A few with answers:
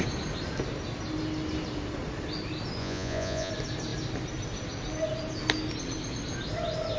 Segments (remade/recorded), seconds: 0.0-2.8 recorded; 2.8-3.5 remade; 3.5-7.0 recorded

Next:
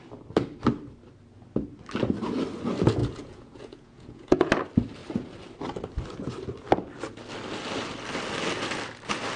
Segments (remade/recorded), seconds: 0.0-3.0 recorded; 3.0-4.5 remade; 4.5-9.4 recorded

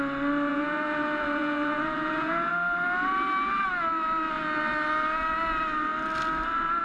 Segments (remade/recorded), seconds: 0.0-0.5 recorded; 0.5-2.5 remade; 2.5-6.8 recorded

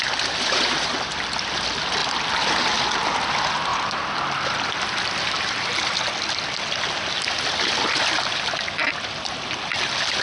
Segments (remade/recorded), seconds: 0.0-10.2 recorded

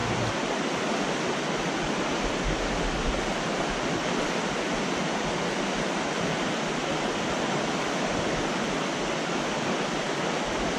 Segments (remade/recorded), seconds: 0.0-10.8 recorded